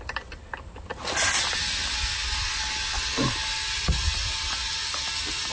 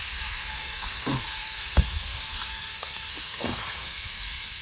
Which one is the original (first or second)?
first